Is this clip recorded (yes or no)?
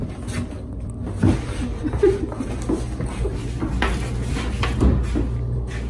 yes